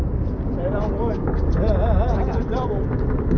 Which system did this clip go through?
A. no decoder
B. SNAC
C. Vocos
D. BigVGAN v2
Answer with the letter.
D